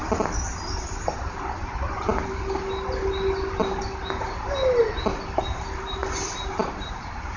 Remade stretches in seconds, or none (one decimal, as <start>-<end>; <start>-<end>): none